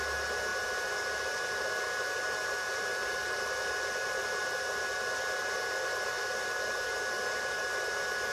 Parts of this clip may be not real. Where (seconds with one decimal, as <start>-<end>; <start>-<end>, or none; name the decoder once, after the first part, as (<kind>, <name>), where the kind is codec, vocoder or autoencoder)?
none